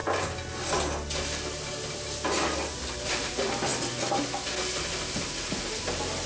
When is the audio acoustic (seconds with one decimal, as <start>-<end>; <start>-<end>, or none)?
0.0-2.9; 3.7-5.6